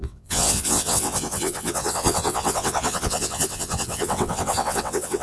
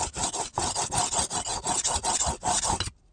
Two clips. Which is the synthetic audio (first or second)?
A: first